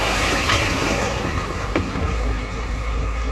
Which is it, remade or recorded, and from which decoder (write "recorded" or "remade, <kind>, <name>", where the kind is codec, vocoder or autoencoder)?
remade, codec, SNAC